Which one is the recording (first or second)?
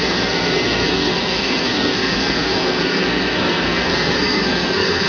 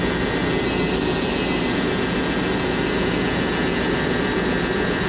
second